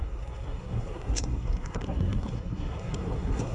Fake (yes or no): yes